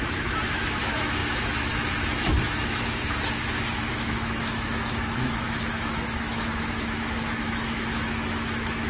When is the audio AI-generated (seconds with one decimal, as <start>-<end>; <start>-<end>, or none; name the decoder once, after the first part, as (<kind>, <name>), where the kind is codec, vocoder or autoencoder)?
0.0-8.9 (autoencoder, DAC-VAE)